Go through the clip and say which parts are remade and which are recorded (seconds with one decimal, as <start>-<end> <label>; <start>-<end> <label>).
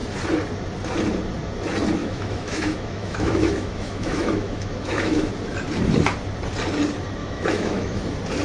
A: 0.0-2.0 recorded; 2.0-5.3 remade; 5.3-7.2 recorded; 7.2-8.0 remade; 8.0-8.4 recorded